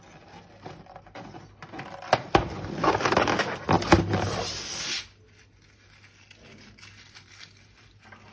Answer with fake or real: real